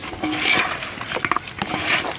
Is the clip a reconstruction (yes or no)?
no